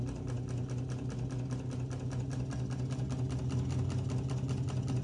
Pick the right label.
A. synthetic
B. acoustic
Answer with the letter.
B